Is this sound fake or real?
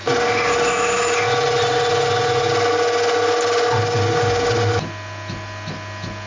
real